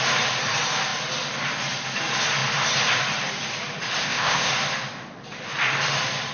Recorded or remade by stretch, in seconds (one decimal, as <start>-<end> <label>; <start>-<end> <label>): 0.0-4.0 recorded; 4.0-4.5 remade; 4.5-6.3 recorded